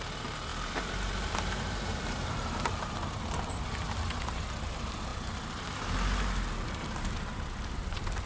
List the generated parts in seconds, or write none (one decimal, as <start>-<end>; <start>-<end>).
0.5-3.1